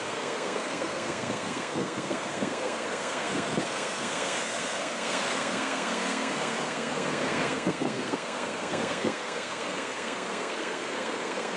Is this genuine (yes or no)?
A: no